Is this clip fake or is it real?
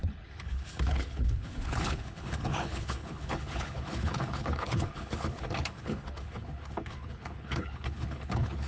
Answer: fake